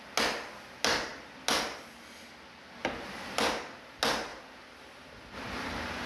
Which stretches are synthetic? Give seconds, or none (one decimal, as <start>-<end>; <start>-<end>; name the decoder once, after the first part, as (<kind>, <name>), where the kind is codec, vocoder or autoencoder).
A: none